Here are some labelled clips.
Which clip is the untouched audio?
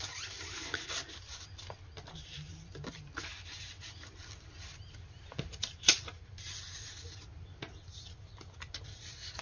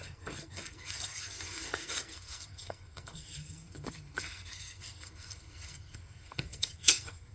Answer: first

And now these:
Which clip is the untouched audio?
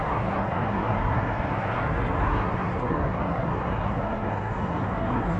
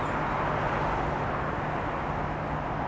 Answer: second